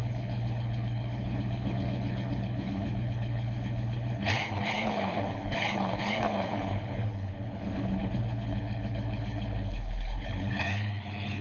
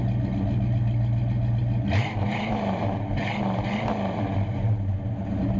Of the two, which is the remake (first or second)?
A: first